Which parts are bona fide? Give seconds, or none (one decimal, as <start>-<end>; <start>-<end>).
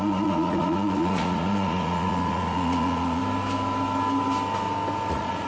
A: 3.2-5.1